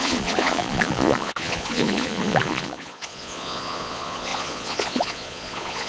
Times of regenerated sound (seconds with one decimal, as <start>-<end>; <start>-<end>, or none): 0.0-5.9